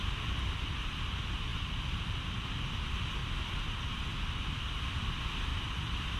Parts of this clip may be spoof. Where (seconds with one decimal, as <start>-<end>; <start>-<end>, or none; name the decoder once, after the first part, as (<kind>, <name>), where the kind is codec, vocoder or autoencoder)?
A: 1.5-2.7 (vocoder, BigVGAN v2); 5.5-6.2